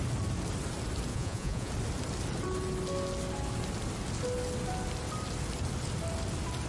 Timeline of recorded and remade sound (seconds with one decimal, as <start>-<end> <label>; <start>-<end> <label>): 0.0-1.1 recorded; 1.1-1.7 remade; 1.7-6.7 recorded